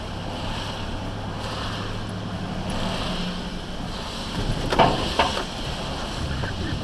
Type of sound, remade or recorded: recorded